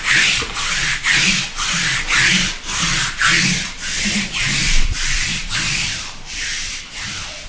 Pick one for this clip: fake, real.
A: fake